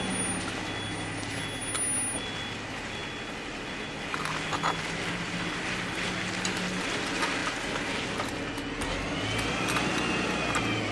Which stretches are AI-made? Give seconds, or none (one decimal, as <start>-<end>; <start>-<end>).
none